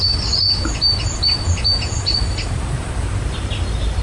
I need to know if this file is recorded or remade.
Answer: recorded